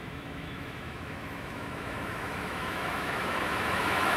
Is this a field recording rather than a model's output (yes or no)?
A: no